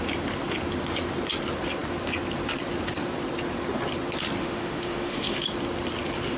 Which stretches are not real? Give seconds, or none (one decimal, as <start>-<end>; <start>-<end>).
4.4-5.4